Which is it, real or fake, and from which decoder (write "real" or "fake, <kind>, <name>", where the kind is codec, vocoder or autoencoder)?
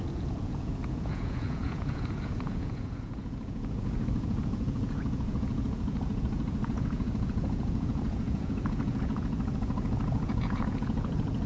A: fake, vocoder, Vocos